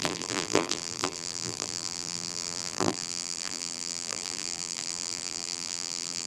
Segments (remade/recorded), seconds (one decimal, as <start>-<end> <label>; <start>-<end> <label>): 0.0-6.3 remade